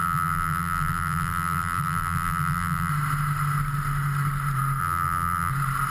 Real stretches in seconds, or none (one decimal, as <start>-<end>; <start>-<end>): 2.9-4.8; 5.5-5.9